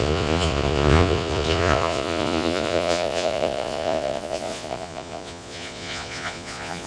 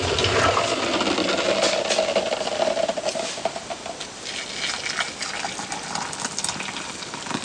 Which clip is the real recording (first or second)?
second